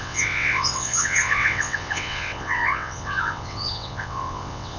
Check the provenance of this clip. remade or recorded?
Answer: remade